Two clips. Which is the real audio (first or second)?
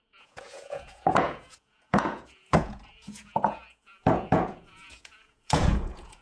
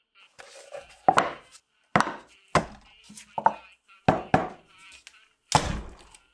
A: second